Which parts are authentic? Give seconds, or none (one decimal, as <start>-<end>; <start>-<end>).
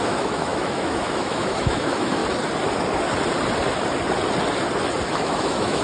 2.2-5.1